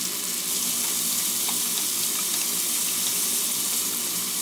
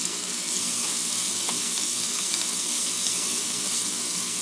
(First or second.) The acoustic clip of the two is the first